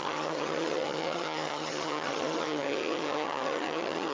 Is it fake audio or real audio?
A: fake